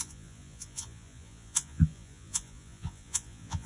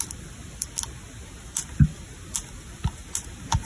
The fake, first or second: first